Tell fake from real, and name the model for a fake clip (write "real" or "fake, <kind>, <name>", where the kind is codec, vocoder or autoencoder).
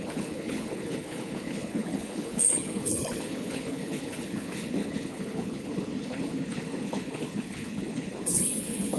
fake, codec, HILCodec